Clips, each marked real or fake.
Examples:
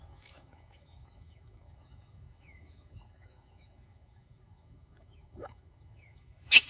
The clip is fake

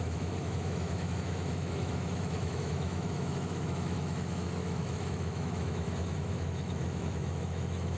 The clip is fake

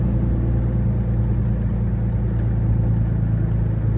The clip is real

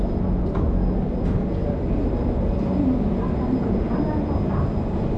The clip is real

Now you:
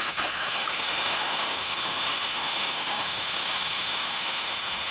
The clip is fake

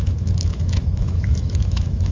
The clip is fake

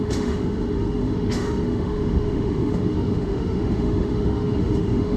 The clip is fake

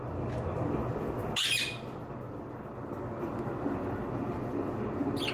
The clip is real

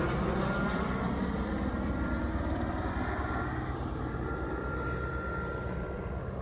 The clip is real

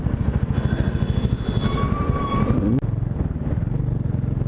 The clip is real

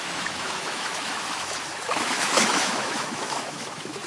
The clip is fake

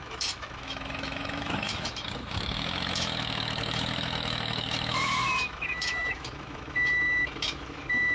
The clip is fake